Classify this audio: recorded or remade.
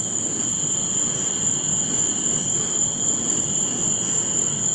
recorded